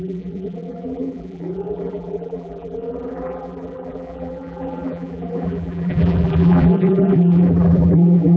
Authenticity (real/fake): fake